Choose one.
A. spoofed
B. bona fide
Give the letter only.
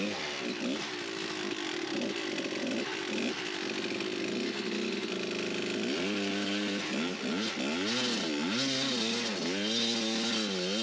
B